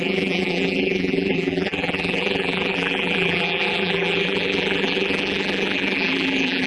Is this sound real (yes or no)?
no